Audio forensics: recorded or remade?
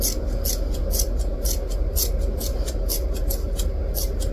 recorded